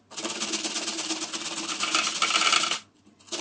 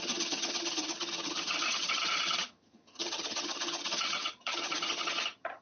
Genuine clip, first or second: first